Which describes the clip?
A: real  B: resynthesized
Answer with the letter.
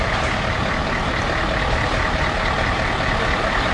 A